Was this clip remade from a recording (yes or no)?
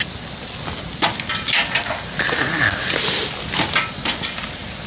no